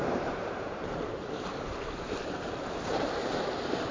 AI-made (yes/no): yes